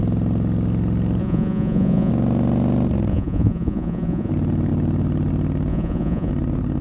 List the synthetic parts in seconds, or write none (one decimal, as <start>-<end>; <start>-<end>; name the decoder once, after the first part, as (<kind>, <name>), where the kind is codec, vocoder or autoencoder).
1.2-2.1 (vocoder, Vocos); 3.1-4.3; 5.7-6.3